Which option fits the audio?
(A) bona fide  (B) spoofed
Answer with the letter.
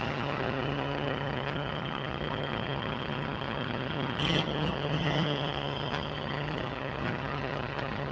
B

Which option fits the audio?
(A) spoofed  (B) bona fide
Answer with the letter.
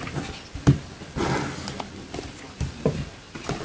B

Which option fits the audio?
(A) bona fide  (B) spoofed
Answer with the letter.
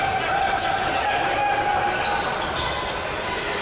A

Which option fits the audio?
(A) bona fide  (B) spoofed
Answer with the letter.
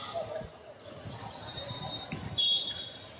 A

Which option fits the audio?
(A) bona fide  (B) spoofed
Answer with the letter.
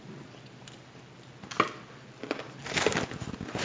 A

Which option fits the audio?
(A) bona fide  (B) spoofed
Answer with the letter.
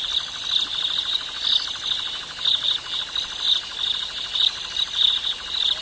A